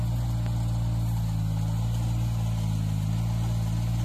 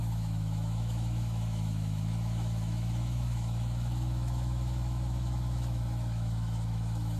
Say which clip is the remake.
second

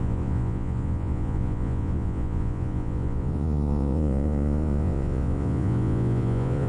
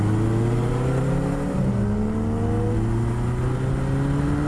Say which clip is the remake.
first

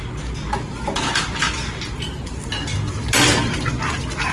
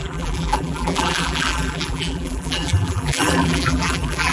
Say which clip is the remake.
second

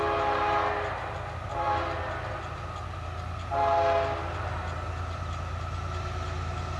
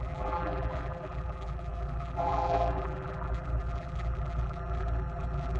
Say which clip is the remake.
second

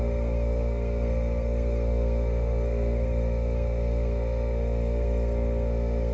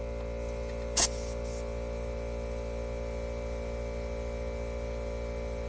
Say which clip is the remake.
first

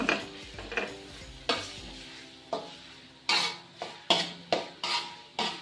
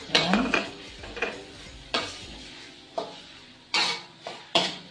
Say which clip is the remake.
second